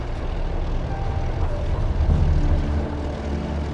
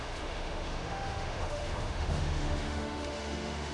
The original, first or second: first